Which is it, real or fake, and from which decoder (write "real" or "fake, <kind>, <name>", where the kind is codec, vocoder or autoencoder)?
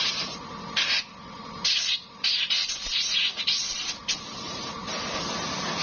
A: fake, vocoder, BigVGAN v2